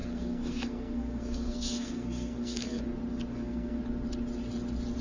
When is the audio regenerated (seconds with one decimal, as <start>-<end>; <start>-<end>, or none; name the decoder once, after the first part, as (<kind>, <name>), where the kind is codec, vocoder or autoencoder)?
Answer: 0.0-2.8 (codec, SNAC); 3.3-3.8